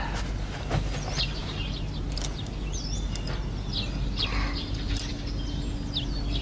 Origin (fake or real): real